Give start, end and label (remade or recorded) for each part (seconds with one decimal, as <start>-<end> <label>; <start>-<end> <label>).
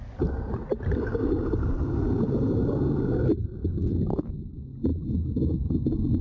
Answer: 0.0-6.2 recorded